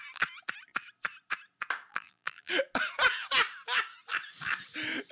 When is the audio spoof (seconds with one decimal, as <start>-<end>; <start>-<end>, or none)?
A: 1.9-2.5